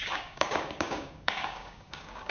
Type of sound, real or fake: fake